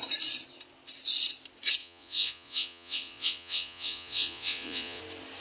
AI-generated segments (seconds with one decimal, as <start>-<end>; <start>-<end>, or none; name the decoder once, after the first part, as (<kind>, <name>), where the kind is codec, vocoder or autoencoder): 1.8-5.0 (vocoder, Vocos)